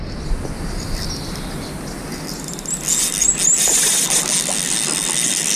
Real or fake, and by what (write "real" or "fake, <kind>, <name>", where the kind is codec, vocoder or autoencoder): real